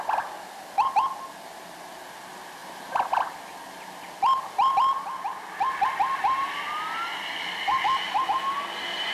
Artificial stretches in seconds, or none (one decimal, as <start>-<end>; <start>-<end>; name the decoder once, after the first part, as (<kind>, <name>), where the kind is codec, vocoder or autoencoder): none